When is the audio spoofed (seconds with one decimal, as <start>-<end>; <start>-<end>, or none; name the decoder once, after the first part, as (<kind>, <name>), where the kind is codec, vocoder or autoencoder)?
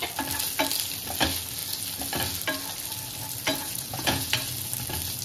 3.6-4.3 (vocoder, Vocos)